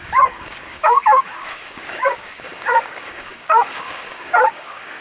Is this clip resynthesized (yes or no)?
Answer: yes